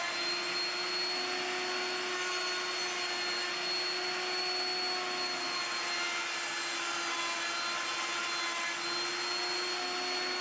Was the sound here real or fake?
real